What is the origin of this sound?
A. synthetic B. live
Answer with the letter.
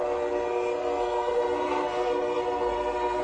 A